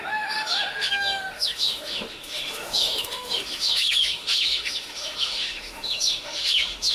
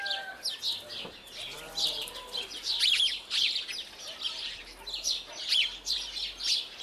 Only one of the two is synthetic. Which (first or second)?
first